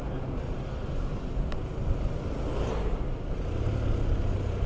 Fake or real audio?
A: real